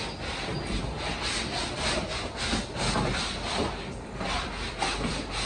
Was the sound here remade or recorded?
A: recorded